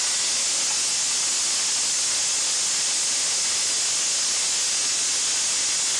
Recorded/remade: recorded